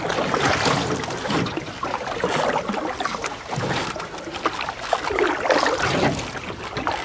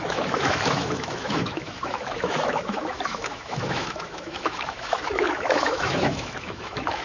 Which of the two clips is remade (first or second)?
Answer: second